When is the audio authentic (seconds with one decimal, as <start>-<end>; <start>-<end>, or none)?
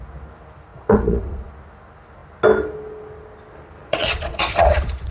0.0-0.7; 1.5-3.8